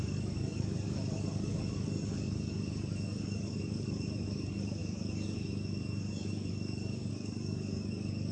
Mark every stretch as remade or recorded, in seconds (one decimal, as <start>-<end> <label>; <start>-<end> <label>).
0.0-8.3 remade